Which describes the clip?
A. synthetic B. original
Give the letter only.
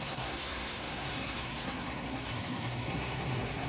A